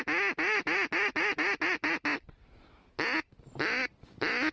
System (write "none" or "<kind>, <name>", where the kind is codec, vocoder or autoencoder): none